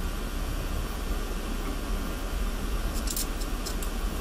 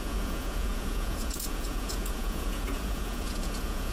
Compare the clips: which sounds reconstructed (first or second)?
second